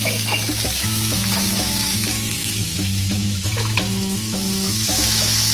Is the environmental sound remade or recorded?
remade